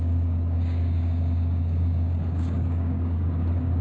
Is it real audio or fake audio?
fake